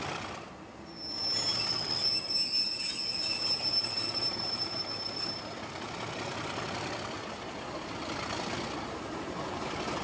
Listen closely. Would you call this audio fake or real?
real